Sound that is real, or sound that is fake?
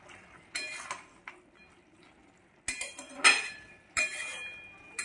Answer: real